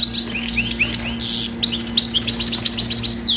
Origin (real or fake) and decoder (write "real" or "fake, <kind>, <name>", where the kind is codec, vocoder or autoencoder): real